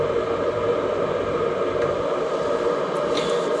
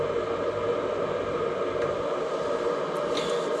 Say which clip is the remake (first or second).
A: first